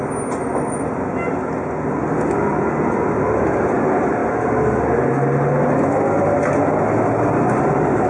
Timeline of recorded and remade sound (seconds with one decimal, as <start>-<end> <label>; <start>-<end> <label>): 0.0-8.1 recorded